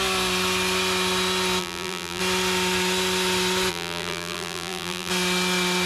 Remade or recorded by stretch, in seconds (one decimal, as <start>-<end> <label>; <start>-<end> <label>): 0.0-1.6 recorded; 1.6-2.2 remade; 2.2-3.7 recorded; 3.7-5.1 remade; 5.1-5.9 recorded